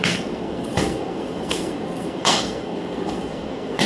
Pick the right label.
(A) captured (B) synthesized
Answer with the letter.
B